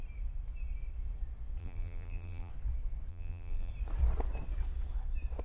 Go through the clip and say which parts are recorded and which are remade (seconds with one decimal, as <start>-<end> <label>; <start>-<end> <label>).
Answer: 0.0-1.6 recorded; 1.6-2.5 remade; 2.5-3.1 recorded; 3.1-3.7 remade; 3.7-5.4 recorded